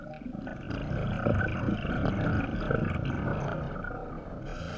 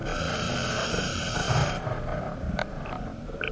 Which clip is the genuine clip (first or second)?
first